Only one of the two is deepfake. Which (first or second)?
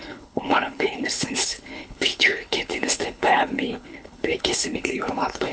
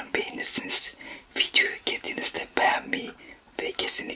first